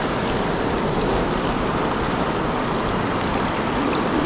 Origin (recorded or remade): recorded